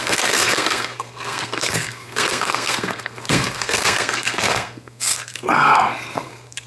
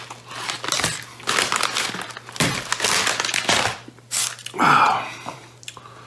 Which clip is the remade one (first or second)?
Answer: first